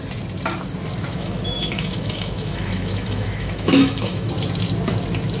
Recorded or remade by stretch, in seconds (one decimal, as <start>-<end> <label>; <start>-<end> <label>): 0.0-1.1 recorded; 1.1-4.3 remade; 4.3-5.4 recorded